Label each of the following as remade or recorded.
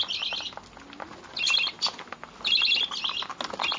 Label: recorded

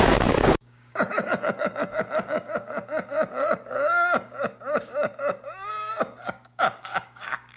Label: remade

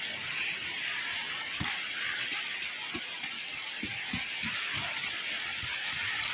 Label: recorded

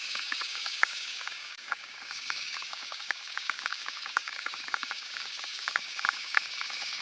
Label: remade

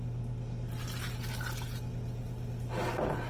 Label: recorded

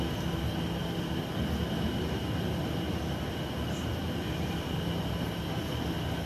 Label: recorded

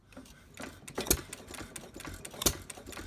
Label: recorded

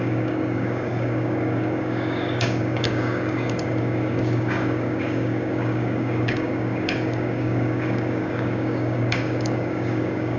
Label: remade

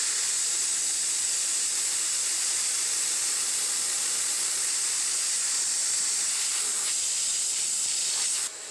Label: recorded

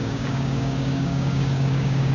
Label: remade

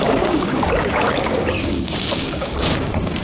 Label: remade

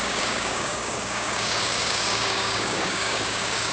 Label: remade